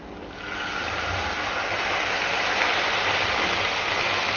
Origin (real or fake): real